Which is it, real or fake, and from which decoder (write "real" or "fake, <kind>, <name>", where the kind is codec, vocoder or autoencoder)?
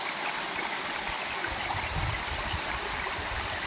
real